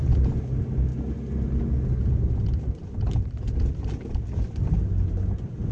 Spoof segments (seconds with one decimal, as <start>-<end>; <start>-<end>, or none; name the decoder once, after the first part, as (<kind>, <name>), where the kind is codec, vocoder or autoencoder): none